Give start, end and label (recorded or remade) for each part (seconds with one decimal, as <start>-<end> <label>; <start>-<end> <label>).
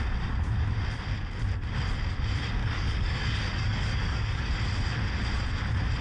0.0-2.6 recorded; 2.6-4.5 remade; 4.5-6.0 recorded